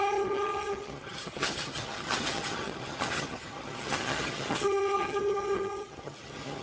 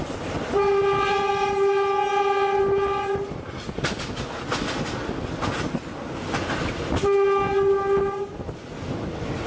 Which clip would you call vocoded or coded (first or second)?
first